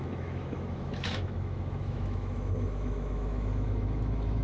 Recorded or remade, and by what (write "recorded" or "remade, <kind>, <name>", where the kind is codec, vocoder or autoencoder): remade, autoencoder, DAC-VAE